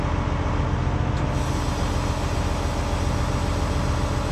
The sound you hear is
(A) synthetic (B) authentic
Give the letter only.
B